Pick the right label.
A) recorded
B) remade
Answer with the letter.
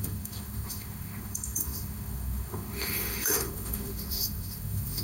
B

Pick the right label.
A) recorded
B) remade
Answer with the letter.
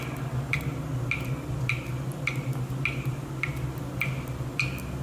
A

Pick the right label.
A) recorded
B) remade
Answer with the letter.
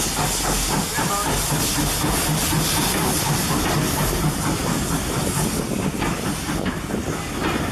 A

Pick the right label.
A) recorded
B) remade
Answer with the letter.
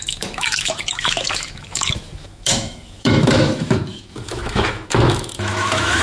B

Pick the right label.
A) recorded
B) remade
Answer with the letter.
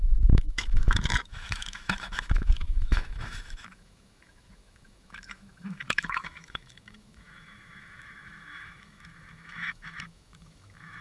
B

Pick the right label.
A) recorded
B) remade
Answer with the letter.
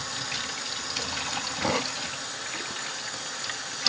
A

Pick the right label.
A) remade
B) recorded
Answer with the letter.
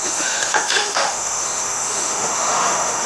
A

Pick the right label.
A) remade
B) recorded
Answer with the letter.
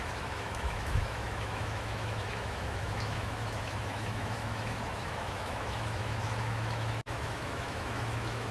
A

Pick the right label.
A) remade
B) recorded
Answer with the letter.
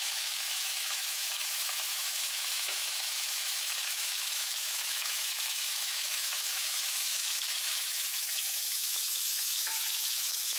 A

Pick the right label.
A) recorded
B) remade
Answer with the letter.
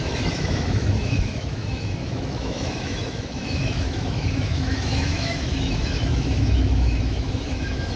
B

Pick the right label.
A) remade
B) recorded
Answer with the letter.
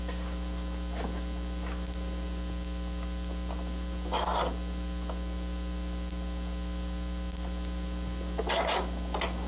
B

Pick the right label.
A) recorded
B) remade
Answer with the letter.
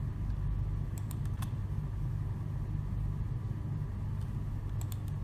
A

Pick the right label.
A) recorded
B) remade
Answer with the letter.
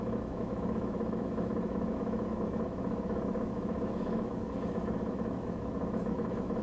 B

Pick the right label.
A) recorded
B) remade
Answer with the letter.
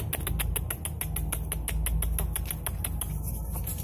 A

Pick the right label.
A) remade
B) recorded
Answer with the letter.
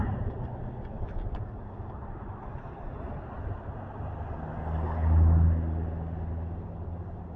B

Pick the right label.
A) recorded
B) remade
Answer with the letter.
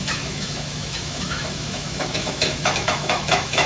B